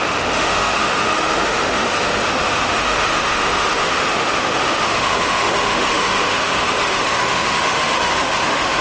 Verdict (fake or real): fake